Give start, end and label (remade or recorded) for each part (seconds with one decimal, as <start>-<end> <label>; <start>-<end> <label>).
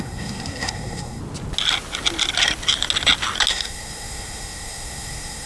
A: 0.0-1.2 remade; 1.2-3.5 recorded; 3.5-5.5 remade